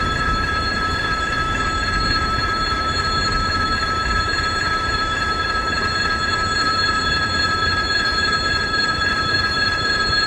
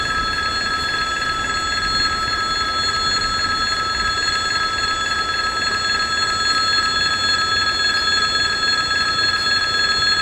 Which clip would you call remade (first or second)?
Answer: first